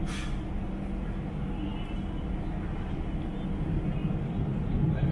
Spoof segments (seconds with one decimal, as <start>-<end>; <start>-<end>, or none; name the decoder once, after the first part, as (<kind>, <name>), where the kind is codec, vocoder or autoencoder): none